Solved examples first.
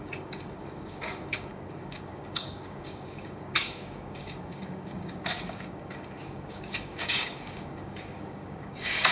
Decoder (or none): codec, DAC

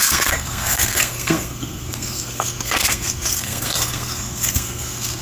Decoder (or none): codec, SNAC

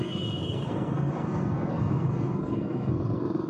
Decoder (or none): codec, SNAC